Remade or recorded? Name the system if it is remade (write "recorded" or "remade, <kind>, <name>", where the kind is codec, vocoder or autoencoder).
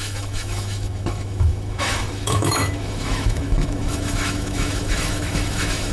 remade, autoencoder, DAC-VAE